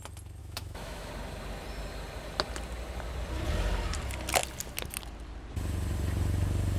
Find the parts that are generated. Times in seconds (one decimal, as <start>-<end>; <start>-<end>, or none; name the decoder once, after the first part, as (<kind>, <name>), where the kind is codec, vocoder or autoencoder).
0.4-1.1 (autoencoder, DAC-VAE)